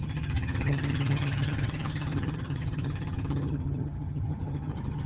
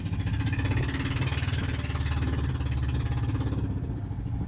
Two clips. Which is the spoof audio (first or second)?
first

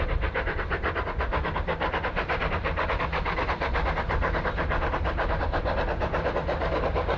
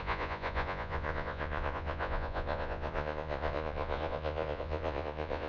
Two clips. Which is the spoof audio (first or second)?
second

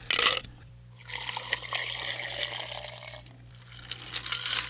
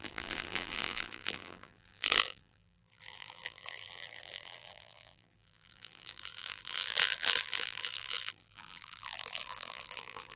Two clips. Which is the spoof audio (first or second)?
second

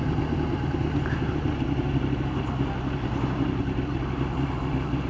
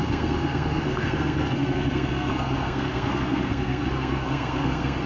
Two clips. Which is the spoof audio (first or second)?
second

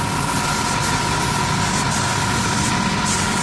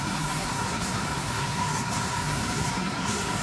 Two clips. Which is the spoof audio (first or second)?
second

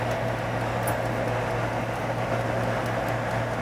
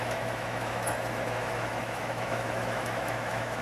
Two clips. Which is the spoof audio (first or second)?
second